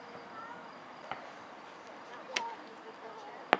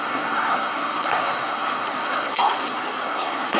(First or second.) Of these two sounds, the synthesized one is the second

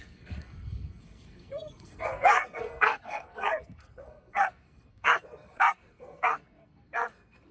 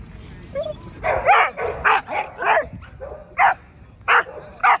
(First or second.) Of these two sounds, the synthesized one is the first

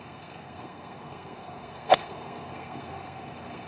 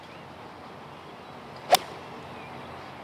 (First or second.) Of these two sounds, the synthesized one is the first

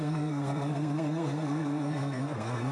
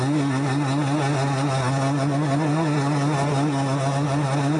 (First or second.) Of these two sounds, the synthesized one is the first